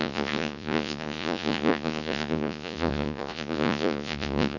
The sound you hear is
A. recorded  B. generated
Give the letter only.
B